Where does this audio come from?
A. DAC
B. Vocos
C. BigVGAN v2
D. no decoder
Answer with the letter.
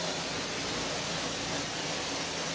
D